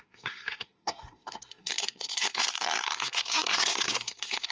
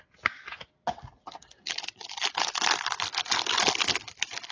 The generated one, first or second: first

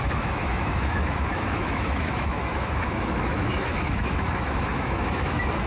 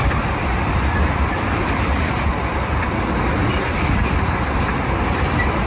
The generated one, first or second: first